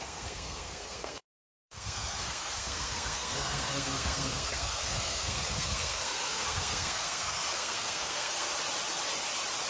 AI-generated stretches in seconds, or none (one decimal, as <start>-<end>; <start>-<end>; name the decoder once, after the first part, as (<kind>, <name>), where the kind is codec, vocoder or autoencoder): 0.0-8.5 (codec, SNAC)